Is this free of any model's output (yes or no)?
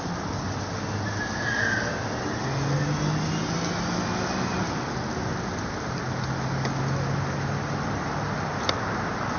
yes